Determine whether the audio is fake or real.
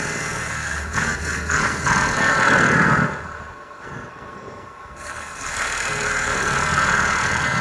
fake